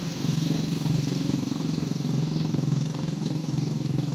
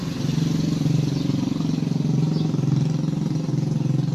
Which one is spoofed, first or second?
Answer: first